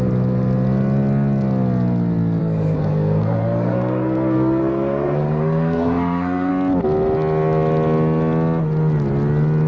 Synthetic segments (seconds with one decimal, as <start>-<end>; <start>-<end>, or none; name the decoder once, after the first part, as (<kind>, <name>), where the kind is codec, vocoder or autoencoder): 2.4-6.5 (codec, SNAC)